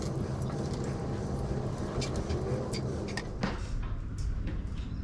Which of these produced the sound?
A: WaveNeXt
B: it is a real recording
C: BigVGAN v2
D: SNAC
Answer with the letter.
B